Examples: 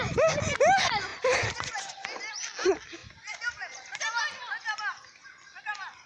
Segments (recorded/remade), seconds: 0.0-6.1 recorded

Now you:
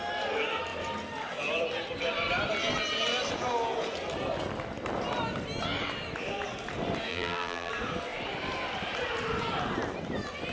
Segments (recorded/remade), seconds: 0.0-7.1 recorded; 7.1-7.7 remade; 7.7-10.5 recorded

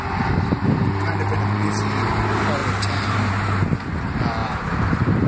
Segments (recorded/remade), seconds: 0.0-0.8 recorded; 0.8-2.0 remade; 2.0-2.6 recorded; 2.6-3.3 remade; 3.3-4.4 recorded; 4.4-5.3 remade

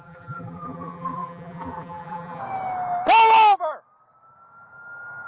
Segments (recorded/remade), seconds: 0.0-2.4 remade; 2.4-5.3 recorded

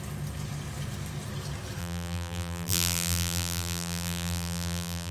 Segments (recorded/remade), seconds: 0.0-1.8 recorded; 1.8-5.1 remade

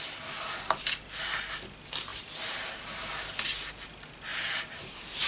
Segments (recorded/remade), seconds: 0.0-2.1 recorded; 2.1-3.1 remade; 3.1-4.3 recorded; 4.3-5.3 remade